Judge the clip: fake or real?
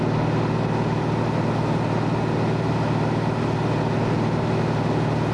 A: real